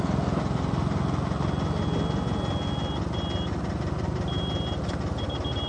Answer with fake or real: real